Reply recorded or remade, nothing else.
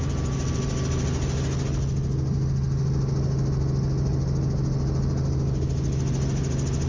recorded